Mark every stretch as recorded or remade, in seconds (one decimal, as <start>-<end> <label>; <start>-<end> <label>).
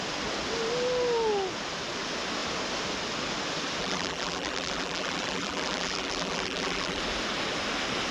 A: 0.0-3.8 recorded; 3.8-7.0 remade; 7.0-8.1 recorded